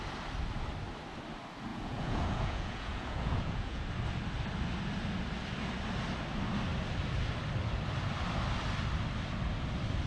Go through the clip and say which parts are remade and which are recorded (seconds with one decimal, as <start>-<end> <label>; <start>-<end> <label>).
0.0-1.7 recorded; 1.7-3.8 remade; 3.8-10.1 recorded